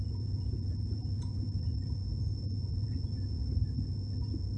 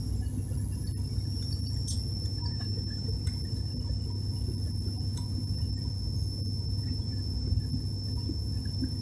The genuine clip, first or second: second